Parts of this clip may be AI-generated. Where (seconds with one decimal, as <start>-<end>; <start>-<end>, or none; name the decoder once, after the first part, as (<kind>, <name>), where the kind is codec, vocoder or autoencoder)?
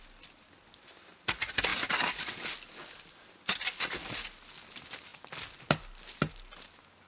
none